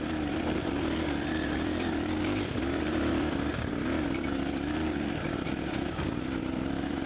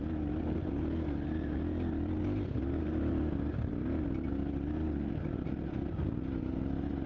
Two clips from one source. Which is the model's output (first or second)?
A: first